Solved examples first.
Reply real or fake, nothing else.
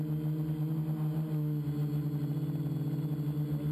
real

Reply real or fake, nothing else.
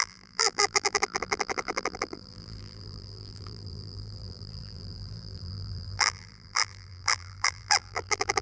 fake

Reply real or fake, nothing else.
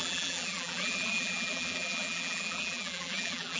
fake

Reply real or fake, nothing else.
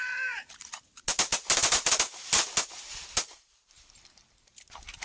fake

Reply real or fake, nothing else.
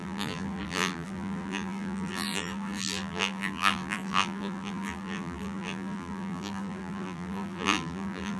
fake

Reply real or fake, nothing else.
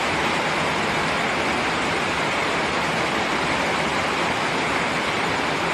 real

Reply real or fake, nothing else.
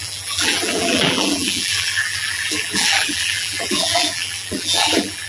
fake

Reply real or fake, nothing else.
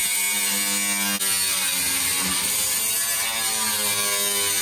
real